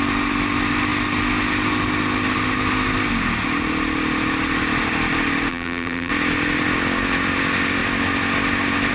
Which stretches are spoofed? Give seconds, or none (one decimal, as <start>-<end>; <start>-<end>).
5.5-6.1